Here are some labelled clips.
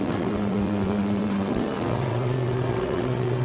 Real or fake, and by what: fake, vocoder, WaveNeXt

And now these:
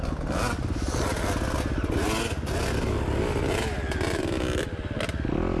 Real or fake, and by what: real